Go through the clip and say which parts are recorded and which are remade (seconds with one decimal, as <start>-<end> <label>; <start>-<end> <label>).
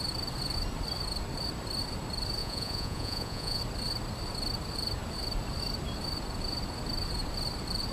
0.0-2.4 recorded; 2.4-3.6 remade; 3.6-7.9 recorded